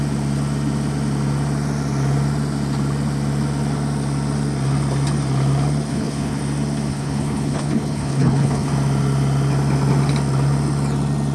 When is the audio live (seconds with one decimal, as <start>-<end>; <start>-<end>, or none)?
0.0-5.9; 6.4-6.9; 8.7-11.3